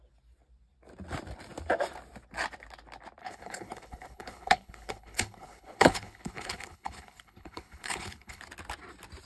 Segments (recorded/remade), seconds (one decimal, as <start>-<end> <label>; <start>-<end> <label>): 0.0-3.2 recorded; 3.2-8.4 remade; 8.4-9.3 recorded